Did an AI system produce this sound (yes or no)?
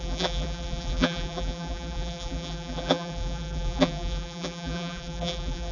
yes